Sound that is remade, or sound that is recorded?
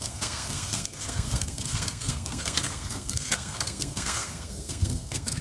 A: remade